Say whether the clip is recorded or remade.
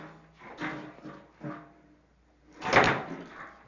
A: recorded